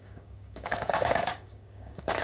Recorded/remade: remade